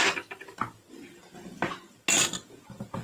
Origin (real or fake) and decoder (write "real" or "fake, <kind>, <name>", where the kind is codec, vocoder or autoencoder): real